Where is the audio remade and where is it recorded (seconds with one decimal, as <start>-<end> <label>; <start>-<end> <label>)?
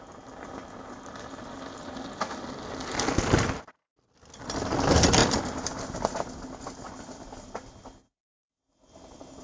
0.0-9.4 recorded